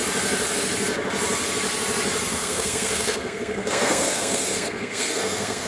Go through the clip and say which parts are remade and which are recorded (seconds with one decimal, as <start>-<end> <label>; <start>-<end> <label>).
0.0-2.3 recorded; 2.3-5.7 remade